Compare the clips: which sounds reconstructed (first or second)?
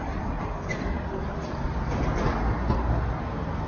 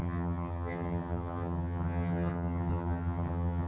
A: second